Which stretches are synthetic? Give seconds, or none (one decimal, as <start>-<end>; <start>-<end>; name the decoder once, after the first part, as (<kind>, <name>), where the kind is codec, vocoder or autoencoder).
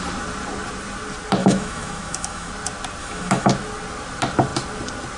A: 1.4-2.5 (autoencoder, DAC-VAE); 3.0-3.5